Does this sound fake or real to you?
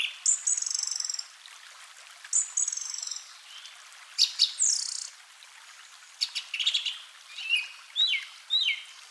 real